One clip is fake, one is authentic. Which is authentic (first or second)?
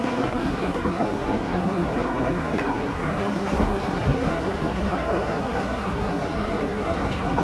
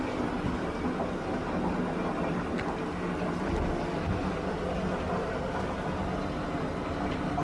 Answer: second